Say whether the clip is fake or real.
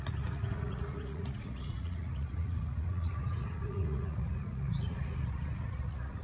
fake